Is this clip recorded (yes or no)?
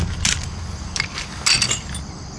yes